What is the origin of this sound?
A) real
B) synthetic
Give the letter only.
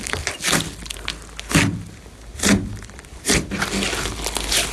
A